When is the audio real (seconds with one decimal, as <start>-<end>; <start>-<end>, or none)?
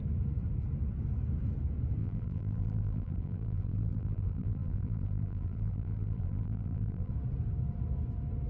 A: 0.0-2.0; 7.1-8.5